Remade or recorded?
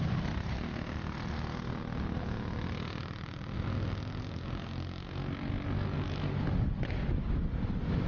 recorded